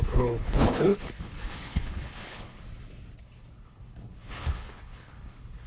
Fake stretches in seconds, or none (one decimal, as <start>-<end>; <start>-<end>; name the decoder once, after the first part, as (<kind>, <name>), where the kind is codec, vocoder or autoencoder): 0.0-2.6 (codec, HILCodec); 3.2-5.7